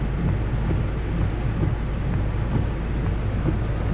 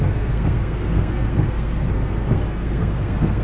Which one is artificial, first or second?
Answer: second